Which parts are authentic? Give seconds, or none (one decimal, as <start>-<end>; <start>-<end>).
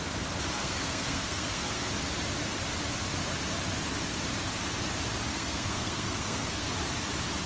0.0-0.6; 1.9-5.3; 6.7-7.5